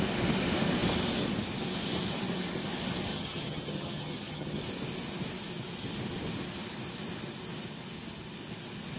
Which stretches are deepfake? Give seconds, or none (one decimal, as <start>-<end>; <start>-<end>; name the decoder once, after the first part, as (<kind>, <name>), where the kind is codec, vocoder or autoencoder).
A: 3.1-4.6 (vocoder, HiFi-GAN)